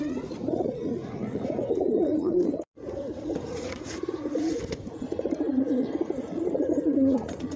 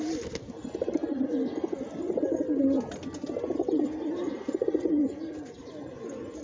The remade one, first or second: first